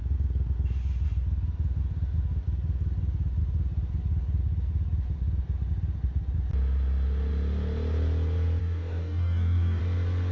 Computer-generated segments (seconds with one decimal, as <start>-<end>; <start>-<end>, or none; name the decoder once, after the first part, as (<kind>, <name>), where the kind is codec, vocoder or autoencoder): 8.6-9.8 (codec, DAC)